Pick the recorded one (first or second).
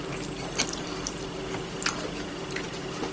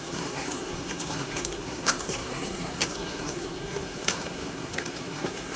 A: first